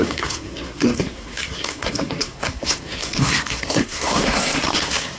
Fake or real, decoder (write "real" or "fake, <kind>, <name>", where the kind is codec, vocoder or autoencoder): fake, codec, SNAC